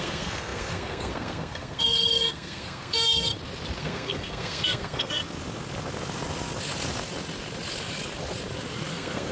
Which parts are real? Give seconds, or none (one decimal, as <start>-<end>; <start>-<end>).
3.3-3.8; 5.2-8.9